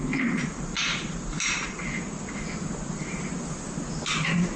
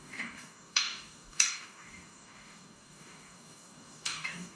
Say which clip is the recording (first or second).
first